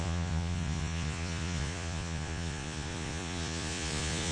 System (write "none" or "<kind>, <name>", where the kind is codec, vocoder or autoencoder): vocoder, Vocos